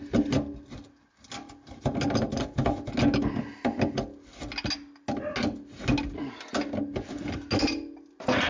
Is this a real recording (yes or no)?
yes